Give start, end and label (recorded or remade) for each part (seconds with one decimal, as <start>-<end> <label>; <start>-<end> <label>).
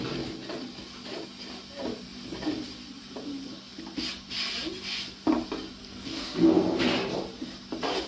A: 0.0-5.8 recorded; 5.8-6.8 remade; 6.8-8.1 recorded